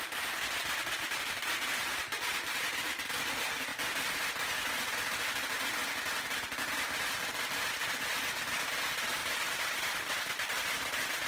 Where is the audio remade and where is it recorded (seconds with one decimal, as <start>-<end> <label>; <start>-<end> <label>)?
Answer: 0.0-9.2 recorded; 9.2-10.2 remade; 10.2-11.3 recorded